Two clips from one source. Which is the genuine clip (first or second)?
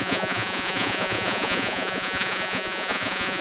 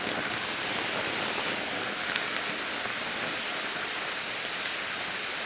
second